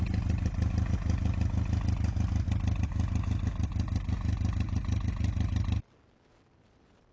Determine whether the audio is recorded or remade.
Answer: recorded